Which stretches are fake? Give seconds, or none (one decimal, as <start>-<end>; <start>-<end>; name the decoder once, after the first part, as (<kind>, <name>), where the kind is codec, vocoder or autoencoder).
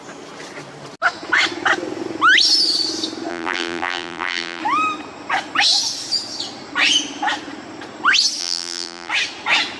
3.3-4.6 (vocoder, BigVGAN v2); 8.4-9.1